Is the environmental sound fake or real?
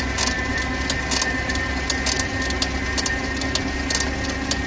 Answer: real